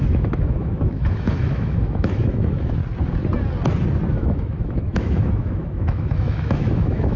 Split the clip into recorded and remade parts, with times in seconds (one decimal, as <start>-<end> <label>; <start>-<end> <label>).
0.0-2.8 remade; 2.8-4.1 recorded; 4.1-7.2 remade